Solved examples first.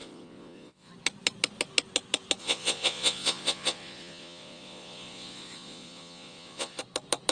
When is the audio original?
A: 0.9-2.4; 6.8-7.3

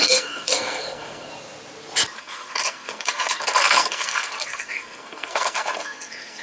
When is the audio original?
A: 1.3-2.2

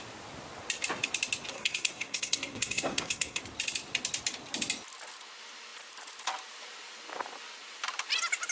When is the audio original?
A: 0.0-1.5; 3.4-8.5

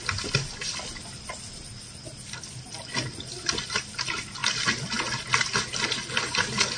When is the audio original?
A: 0.0-6.8

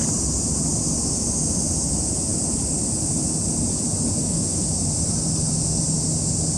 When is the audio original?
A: 0.0-4.2; 4.8-6.6

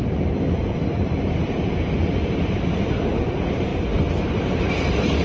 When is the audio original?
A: 3.7-4.4

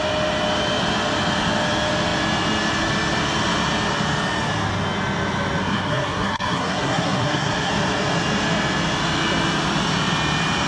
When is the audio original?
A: 0.0-5.6; 7.7-10.7